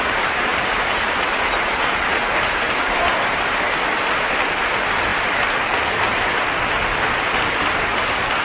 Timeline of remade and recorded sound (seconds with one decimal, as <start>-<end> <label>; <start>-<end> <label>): 0.0-0.5 recorded; 0.5-3.5 remade; 3.5-8.4 recorded